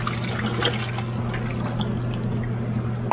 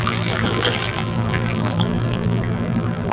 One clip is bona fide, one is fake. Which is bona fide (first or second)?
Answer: first